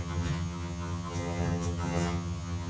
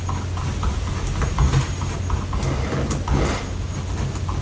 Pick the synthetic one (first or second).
first